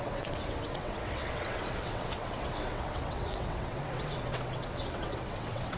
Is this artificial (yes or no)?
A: yes